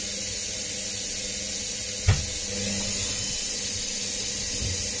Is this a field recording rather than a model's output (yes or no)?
yes